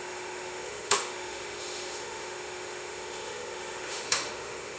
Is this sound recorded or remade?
remade